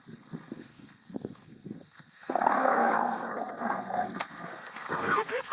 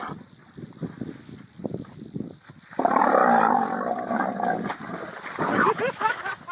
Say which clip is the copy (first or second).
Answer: first